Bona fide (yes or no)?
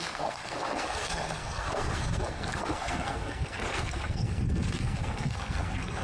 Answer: no